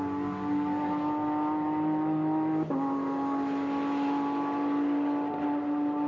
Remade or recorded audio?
recorded